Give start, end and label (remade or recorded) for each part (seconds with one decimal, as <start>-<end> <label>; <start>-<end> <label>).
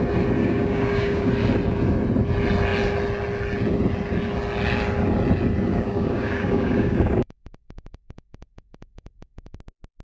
0.0-0.4 recorded; 0.4-1.3 remade; 1.3-5.7 recorded; 5.7-9.6 remade; 9.6-10.0 recorded